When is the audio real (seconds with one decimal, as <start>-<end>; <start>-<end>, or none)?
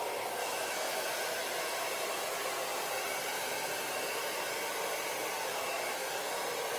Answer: 0.0-0.4; 1.1-5.5; 6.3-6.8